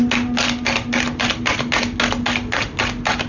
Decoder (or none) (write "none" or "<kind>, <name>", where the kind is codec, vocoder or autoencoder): none